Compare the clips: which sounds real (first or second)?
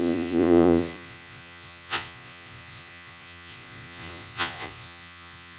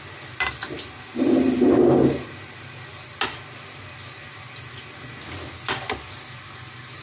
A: second